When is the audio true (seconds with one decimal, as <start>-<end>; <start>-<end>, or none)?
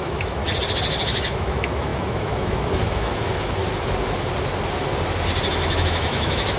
0.4-1.0; 3.6-5.5